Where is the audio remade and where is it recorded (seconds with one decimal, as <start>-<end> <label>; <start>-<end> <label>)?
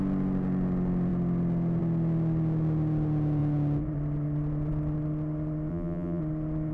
0.0-5.7 recorded; 5.7-6.2 remade; 6.2-6.7 recorded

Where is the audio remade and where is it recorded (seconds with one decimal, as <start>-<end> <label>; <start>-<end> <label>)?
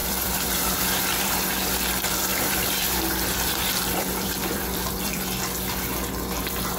0.0-1.6 remade; 1.6-2.3 recorded; 2.3-5.4 remade; 5.4-6.8 recorded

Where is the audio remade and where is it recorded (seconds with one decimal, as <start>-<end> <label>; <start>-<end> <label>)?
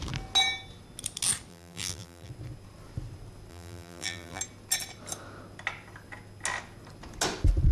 0.0-1.5 recorded; 1.5-2.3 remade; 2.3-3.5 recorded; 3.5-4.4 remade; 4.4-7.7 recorded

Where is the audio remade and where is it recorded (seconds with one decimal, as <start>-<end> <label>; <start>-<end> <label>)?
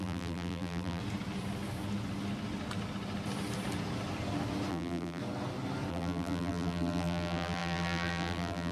0.0-1.0 remade; 1.0-4.7 recorded; 4.7-5.2 remade; 5.2-5.9 recorded; 5.9-8.7 remade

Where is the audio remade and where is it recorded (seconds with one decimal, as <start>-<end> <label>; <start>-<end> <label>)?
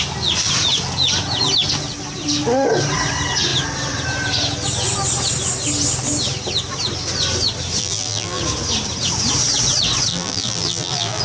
0.0-7.8 recorded; 7.8-8.4 remade; 8.4-10.1 recorded; 10.1-11.2 remade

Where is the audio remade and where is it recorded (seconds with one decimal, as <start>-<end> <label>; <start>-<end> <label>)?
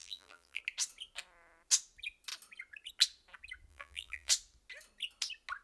0.0-0.6 remade; 0.6-3.7 recorded; 3.7-4.3 remade; 4.3-5.6 recorded